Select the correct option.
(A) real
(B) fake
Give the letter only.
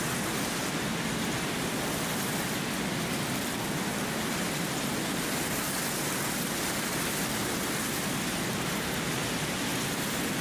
A